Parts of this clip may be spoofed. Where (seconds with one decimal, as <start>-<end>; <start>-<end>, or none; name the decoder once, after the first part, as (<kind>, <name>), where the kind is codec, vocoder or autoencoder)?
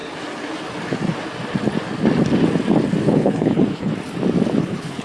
3.0-3.9 (codec, HILCodec); 4.6-5.0